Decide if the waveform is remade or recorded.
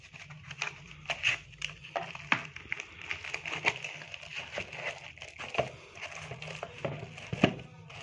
recorded